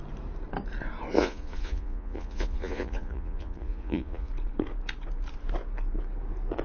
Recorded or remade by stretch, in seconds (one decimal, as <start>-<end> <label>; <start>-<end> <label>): 0.0-1.2 recorded; 1.2-4.3 remade; 4.3-6.6 recorded